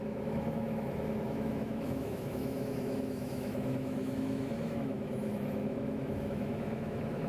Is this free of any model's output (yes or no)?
no